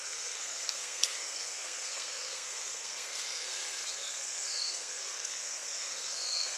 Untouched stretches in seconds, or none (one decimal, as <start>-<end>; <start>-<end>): none